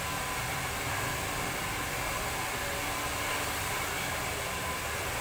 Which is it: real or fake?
real